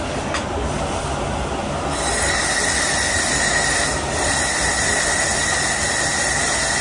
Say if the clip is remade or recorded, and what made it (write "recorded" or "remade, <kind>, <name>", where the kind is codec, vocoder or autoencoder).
recorded